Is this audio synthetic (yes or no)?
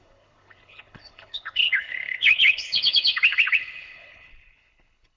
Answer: yes